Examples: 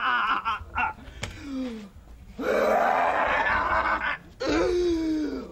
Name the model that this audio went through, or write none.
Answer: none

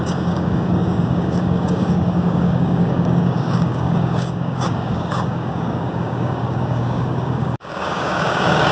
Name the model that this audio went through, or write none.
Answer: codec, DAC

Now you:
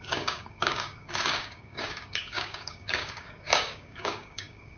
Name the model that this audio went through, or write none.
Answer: codec, DAC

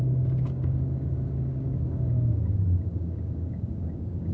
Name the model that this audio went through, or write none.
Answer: codec, DAC